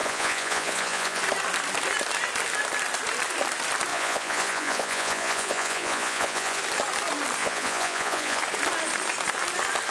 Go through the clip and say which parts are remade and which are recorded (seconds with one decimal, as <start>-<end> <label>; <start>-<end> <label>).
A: 0.0-1.2 remade; 1.2-3.9 recorded; 3.9-6.6 remade; 6.6-7.4 recorded; 7.4-8.4 remade; 8.4-9.9 recorded